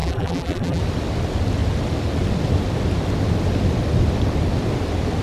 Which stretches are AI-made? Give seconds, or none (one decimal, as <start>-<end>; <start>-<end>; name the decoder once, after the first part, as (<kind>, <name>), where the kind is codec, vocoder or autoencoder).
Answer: 0.0-0.8 (vocoder, BigVGAN v2)